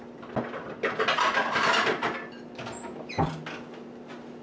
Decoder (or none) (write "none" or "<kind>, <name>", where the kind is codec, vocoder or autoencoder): none